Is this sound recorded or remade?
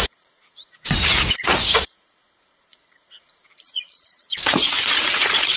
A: remade